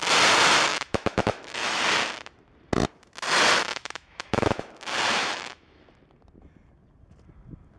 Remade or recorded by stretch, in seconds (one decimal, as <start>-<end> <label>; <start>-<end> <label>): 0.0-0.7 recorded; 0.7-1.8 remade; 1.8-3.7 recorded; 3.7-4.6 remade; 4.6-5.2 recorded; 5.2-5.8 remade; 5.8-7.8 recorded